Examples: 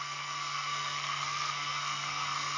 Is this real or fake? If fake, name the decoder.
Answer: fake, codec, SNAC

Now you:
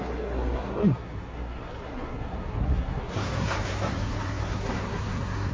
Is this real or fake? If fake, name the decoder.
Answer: fake, codec, SNAC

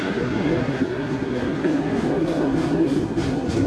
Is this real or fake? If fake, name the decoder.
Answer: fake, codec, SNAC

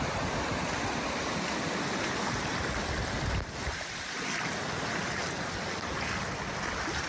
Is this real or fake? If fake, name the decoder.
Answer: real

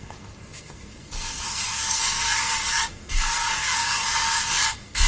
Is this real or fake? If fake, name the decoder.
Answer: fake, codec, SNAC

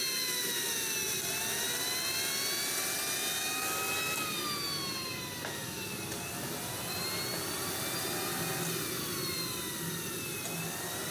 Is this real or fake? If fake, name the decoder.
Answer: real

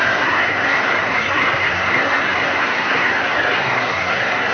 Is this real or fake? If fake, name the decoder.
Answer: fake, codec, SNAC